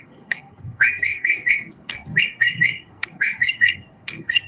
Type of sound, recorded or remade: remade